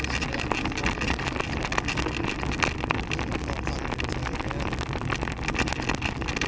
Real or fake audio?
real